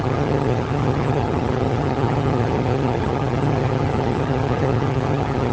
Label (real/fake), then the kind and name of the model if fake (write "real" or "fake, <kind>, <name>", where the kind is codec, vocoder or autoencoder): fake, vocoder, HiFi-GAN